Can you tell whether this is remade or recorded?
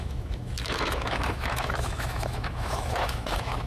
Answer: remade